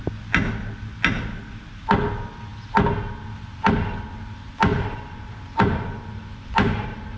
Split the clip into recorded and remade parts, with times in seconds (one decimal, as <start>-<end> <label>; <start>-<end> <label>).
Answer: 0.0-4.7 recorded; 4.7-7.2 remade